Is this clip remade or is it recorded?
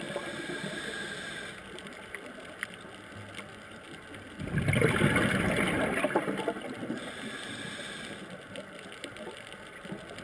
recorded